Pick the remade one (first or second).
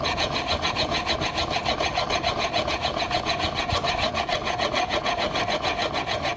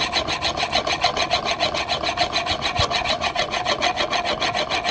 first